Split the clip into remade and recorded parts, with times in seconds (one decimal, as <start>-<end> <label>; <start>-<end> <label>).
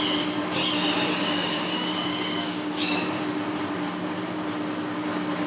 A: 0.0-1.2 recorded; 1.2-3.0 remade; 3.0-5.5 recorded